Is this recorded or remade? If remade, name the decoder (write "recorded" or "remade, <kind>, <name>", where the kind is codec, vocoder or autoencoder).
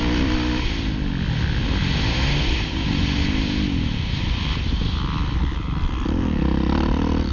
recorded